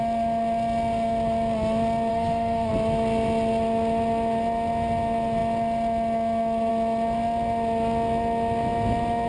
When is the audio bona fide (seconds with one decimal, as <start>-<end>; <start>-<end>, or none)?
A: 0.0-2.1; 2.7-9.3